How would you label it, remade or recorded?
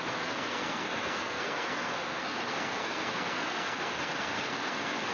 remade